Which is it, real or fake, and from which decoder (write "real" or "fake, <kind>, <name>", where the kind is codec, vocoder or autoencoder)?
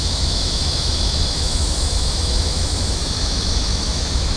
fake, autoencoder, DAC-VAE